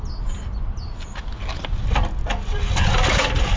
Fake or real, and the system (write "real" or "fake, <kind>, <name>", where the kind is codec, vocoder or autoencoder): real